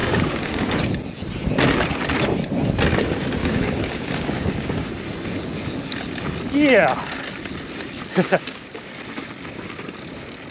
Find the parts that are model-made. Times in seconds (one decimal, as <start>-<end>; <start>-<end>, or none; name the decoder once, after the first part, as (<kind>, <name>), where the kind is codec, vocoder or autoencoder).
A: 0.0-0.7 (codec, DAC); 3.4-4.9; 8.1-8.9